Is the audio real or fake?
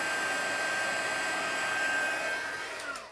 real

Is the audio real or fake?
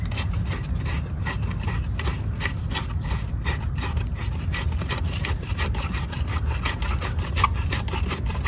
real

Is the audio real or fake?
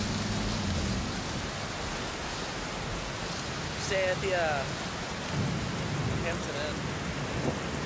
real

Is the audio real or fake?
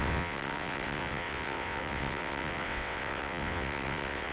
fake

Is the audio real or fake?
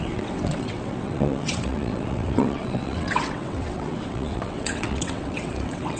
fake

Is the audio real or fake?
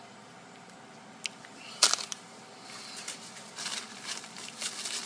real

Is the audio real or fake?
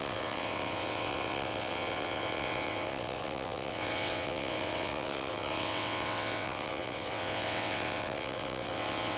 fake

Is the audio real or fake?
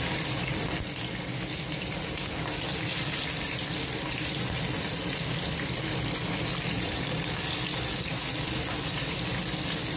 real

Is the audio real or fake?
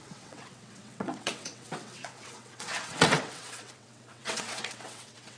fake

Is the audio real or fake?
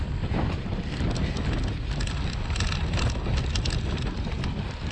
real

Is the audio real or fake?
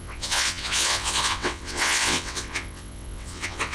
fake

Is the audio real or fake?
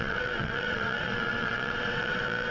fake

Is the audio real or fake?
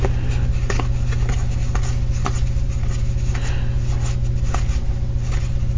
real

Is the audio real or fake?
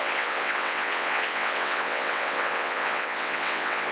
fake